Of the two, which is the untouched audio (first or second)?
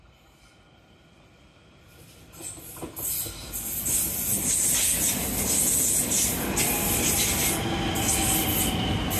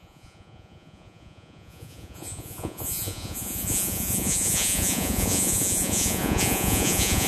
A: first